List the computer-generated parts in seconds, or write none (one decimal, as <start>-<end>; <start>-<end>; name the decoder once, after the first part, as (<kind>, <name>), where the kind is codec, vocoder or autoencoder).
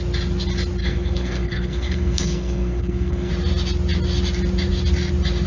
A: 0.8-3.3 (codec, SNAC)